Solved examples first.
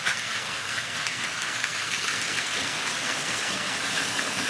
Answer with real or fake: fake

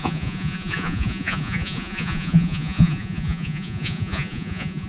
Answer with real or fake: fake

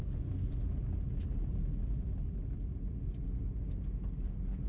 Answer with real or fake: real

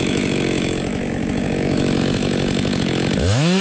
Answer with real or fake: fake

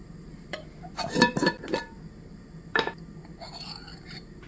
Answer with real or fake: real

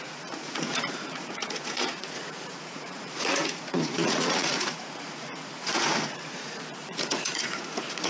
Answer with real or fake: fake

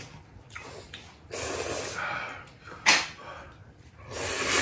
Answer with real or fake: real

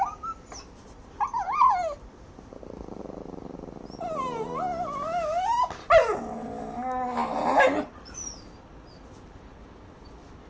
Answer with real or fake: real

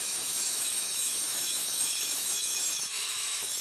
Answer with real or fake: fake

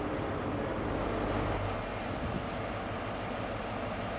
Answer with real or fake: real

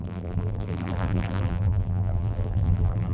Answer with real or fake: fake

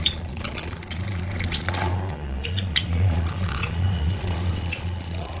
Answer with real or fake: fake